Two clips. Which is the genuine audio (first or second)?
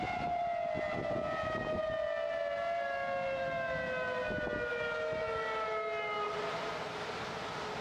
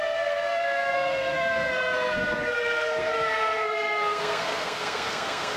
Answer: first